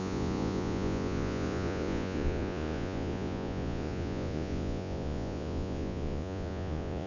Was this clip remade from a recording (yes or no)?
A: yes